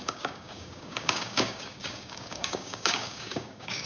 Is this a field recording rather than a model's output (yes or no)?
no